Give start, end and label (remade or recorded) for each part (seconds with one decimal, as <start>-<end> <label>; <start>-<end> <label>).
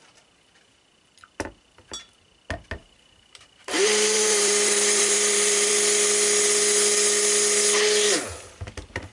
0.0-2.8 recorded; 2.8-5.7 remade; 5.7-9.1 recorded